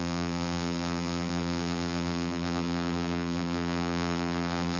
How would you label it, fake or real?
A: fake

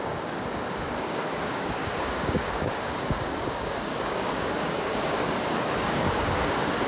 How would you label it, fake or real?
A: fake